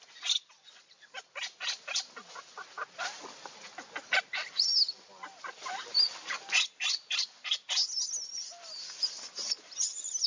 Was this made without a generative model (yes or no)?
yes